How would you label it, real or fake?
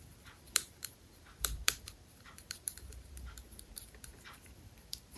fake